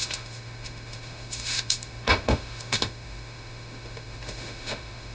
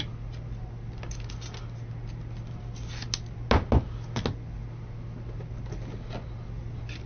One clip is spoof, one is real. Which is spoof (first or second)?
first